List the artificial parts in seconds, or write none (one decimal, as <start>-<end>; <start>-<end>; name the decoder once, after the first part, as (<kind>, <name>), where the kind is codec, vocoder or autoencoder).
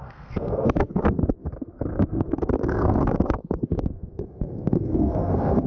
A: 0.0-5.7 (codec, SNAC)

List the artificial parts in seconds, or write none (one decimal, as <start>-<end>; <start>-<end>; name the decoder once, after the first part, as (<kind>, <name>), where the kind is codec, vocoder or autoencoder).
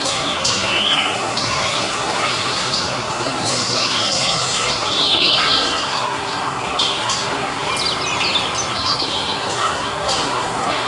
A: 0.0-7.7 (codec, SNAC); 8.7-10.9